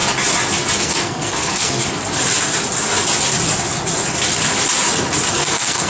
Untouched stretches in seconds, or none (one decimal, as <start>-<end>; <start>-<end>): 0.0-0.8; 1.8-5.3